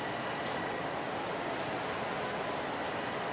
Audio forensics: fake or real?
real